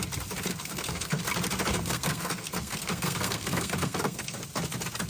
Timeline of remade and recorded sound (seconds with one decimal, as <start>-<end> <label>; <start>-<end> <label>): 0.0-0.5 recorded; 0.5-1.2 remade; 1.2-1.7 recorded; 1.7-4.4 remade; 4.4-5.1 recorded